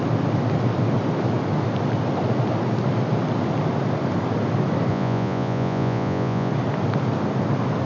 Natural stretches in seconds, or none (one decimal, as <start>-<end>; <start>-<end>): 0.0-4.9; 6.5-7.9